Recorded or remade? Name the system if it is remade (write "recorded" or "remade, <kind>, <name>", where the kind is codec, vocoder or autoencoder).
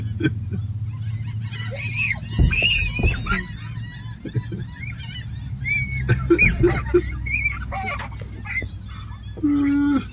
recorded